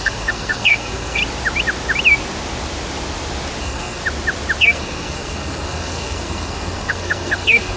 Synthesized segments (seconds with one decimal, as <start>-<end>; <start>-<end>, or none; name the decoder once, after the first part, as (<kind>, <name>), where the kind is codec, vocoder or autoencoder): 0.0-1.2 (codec, SNAC); 3.6-4.0; 4.6-7.8